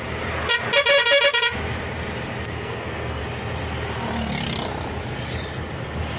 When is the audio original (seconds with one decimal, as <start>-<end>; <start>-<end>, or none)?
0.0-2.5; 3.2-6.2